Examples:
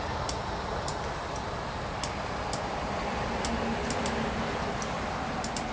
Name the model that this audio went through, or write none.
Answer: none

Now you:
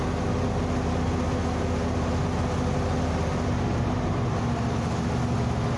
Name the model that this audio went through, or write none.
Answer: none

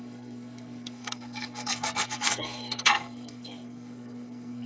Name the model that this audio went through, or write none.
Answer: codec, SNAC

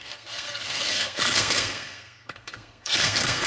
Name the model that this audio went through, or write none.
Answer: codec, SNAC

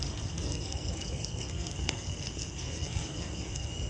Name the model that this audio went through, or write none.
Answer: codec, SNAC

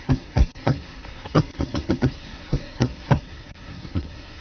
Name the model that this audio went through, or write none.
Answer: codec, SNAC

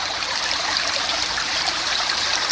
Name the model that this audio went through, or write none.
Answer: vocoder, BigVGAN v2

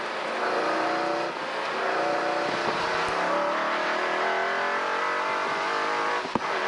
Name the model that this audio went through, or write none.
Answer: none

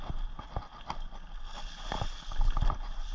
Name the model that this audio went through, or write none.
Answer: none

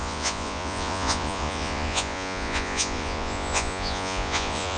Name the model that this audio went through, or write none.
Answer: vocoder, Vocos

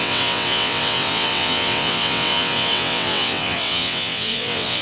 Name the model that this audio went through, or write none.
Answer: vocoder, WaveNeXt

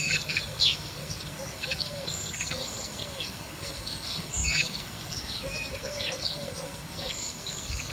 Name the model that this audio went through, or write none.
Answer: codec, SNAC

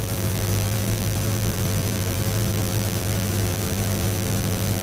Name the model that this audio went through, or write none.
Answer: vocoder, BigVGAN v2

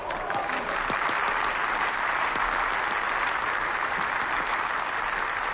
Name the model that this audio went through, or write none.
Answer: none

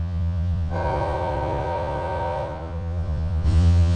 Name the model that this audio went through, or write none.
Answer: vocoder, Vocos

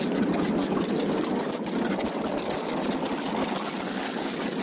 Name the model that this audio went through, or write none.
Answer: none